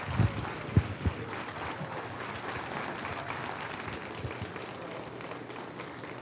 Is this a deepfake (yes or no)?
no